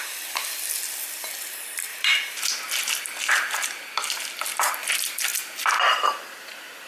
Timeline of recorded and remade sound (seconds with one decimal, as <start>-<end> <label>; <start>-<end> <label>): 0.0-6.9 recorded